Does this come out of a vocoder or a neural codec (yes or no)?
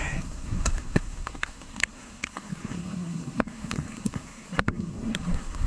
yes